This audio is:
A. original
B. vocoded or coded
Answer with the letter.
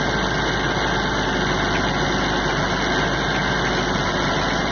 A